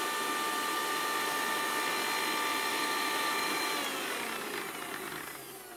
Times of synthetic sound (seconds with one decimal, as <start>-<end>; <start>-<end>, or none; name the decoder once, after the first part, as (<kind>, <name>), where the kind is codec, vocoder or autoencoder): 2.7-3.7 (autoencoder, DAC-VAE)